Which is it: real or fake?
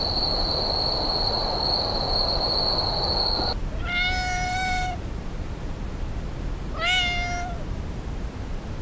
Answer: real